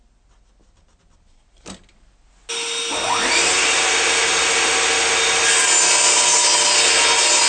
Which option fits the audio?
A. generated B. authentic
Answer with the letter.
B